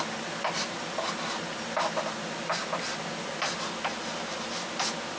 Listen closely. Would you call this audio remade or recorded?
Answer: recorded